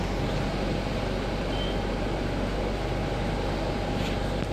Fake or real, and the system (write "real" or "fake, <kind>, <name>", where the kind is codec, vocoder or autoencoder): real